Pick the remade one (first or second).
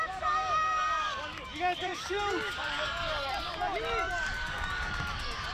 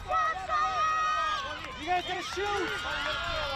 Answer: first